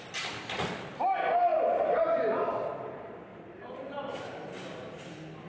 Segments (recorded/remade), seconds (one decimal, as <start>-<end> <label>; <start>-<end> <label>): 0.0-1.5 recorded; 1.5-2.0 remade; 2.0-3.3 recorded; 3.3-5.5 remade